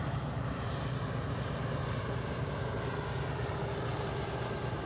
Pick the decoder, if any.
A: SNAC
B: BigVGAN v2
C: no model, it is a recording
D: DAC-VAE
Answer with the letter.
C